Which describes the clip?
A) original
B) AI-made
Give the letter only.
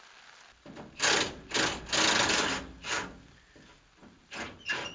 A